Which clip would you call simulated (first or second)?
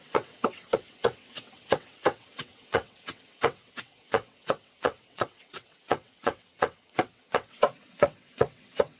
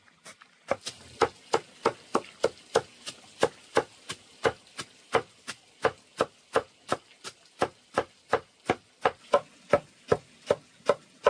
first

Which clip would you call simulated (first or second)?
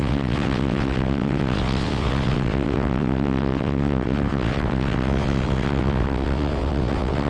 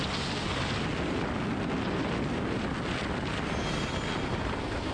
first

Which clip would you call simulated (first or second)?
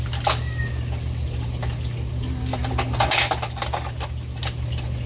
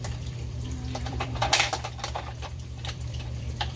second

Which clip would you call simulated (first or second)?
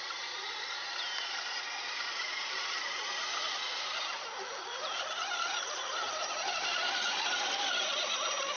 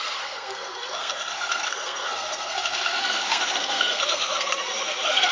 second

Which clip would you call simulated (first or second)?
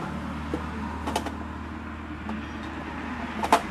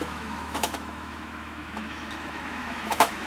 second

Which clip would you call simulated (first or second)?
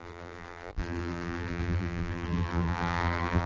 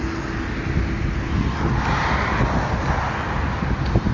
first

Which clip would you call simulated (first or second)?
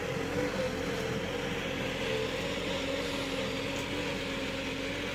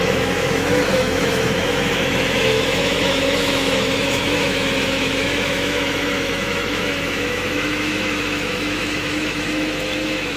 second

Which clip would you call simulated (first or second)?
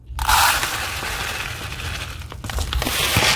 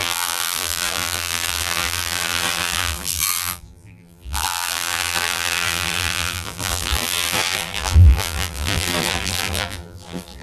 second